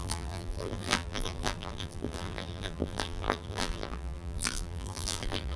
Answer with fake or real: fake